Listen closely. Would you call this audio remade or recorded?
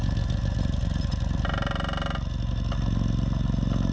recorded